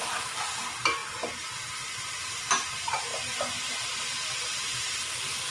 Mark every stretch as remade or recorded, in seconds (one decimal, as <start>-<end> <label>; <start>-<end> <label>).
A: 0.0-5.5 recorded